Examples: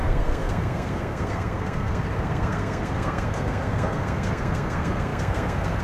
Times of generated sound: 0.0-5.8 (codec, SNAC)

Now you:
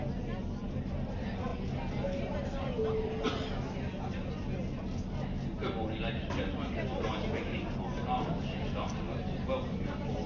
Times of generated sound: none

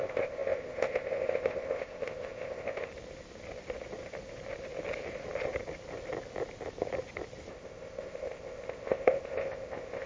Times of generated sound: 0.0-2.9 (codec, ZipCodec); 7.5-10.1

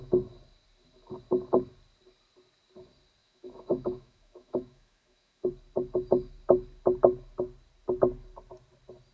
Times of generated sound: 3.2-5.5 (autoencoder, DAC-VAE)

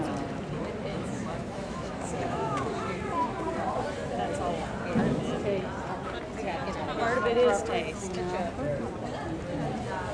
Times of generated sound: 0.9-2.7 (autoencoder, DAC-VAE)

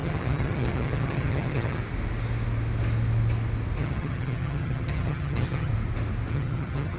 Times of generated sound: 0.0-1.8 (vocoder, HiFi-GAN); 3.8-5.7; 6.3-7.0

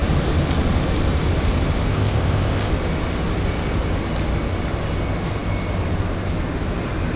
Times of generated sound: 1.9-2.7 (codec, ZipCodec)

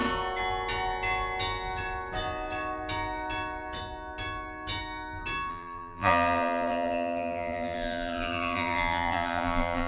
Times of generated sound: 5.5-9.9 (vocoder, BigVGAN v2)